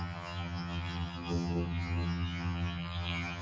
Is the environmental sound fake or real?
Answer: fake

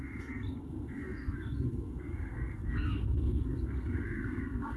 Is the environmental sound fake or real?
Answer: fake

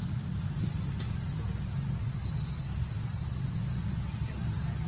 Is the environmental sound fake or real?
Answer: real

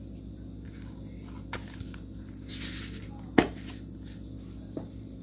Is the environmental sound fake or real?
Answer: real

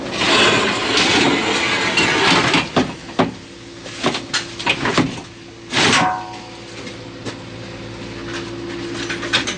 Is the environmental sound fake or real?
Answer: real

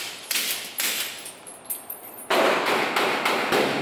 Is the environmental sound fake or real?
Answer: real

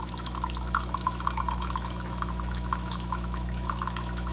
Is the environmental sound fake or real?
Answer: fake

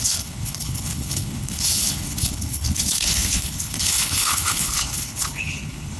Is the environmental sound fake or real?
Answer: fake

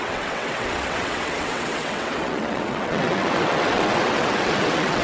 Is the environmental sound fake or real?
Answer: fake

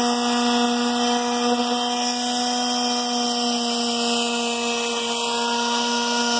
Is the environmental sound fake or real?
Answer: real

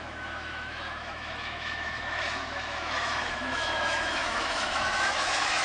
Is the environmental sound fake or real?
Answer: fake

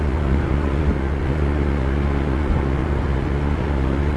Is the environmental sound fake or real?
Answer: fake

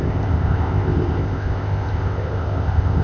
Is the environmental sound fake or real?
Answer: fake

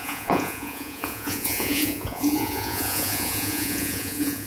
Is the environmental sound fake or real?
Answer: fake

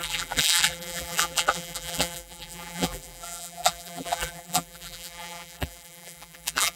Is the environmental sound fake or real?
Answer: fake